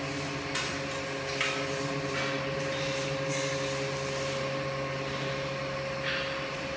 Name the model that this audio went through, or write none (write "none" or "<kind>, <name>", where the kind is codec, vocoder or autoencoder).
none